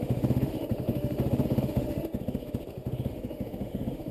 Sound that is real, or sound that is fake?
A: fake